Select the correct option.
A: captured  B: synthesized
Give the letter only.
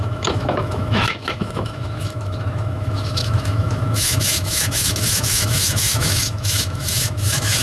B